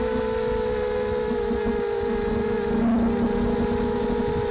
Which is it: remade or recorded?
recorded